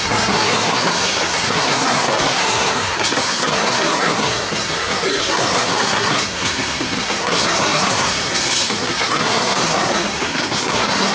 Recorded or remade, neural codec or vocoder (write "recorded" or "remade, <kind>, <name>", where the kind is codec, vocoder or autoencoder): remade, codec, SNAC